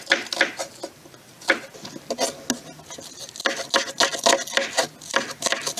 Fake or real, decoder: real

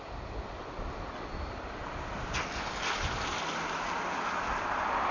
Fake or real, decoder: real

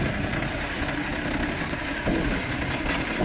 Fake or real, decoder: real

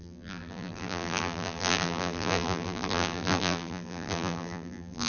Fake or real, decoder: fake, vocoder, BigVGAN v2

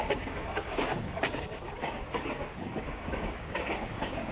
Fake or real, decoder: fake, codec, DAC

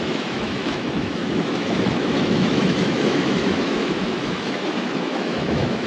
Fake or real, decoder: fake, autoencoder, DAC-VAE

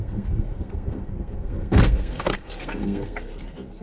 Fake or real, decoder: fake, codec, SNAC